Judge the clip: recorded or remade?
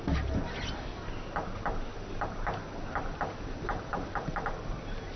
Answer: recorded